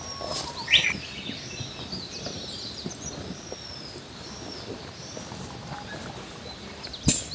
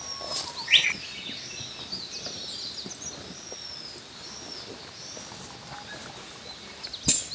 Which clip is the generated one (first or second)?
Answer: first